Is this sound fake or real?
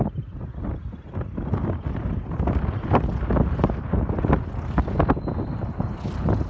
real